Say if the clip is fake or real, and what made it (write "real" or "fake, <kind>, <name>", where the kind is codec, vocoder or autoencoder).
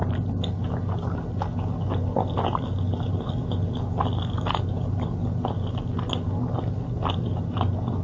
real